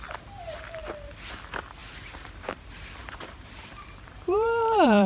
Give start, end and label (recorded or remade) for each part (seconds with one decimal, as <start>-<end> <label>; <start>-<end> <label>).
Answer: 0.0-1.8 recorded; 1.8-5.1 remade

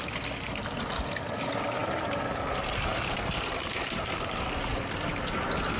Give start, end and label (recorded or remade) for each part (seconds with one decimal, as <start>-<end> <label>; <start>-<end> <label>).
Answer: 0.0-5.8 recorded

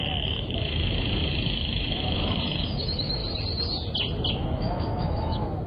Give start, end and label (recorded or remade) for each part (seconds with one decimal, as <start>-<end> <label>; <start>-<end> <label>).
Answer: 0.0-3.2 remade; 3.2-4.3 recorded; 4.3-5.7 remade

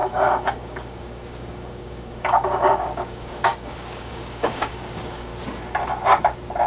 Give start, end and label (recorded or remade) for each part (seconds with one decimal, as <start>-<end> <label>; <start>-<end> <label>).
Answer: 0.0-5.3 remade; 5.3-6.7 recorded

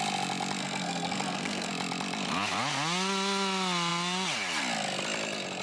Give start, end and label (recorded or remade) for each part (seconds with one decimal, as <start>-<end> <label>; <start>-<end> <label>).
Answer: 0.0-0.6 recorded; 0.6-1.7 remade; 1.7-5.6 recorded

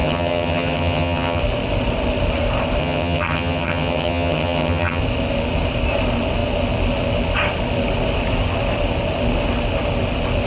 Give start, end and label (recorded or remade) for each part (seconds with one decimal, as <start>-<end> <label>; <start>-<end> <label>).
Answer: 0.0-1.4 remade; 1.4-2.8 recorded; 2.8-5.0 remade; 5.0-10.5 recorded

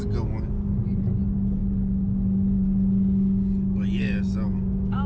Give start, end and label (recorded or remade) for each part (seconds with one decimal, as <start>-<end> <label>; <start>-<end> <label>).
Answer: 0.0-5.1 recorded